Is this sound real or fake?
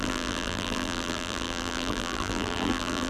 fake